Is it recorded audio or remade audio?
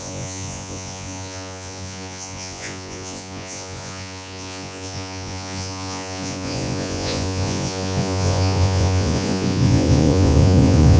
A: remade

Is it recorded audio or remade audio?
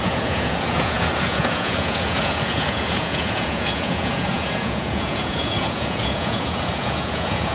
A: remade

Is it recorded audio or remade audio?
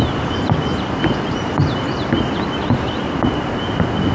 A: recorded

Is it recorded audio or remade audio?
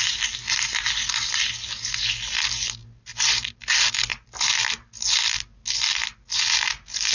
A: recorded